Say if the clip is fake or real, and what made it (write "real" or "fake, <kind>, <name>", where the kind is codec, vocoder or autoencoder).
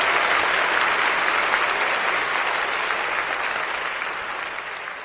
real